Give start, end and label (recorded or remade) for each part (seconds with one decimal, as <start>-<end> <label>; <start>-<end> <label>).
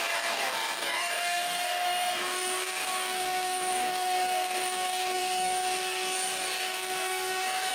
0.0-7.7 remade